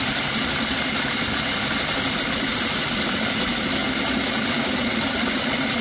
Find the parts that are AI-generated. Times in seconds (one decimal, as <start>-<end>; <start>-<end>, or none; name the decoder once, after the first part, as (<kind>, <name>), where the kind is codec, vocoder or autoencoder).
none